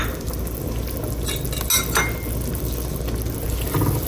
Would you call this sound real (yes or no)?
yes